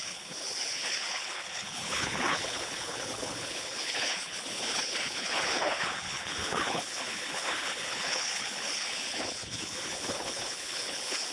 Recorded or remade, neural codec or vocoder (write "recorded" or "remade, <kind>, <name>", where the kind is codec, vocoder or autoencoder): remade, codec, HILCodec